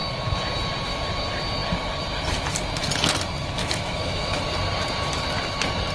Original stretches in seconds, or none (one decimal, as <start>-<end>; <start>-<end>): 0.0-3.6; 4.4-5.9